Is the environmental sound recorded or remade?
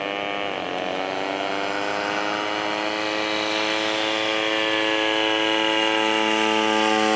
recorded